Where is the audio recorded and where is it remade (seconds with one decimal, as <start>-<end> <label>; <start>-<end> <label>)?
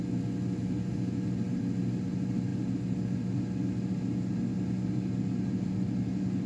0.0-6.5 recorded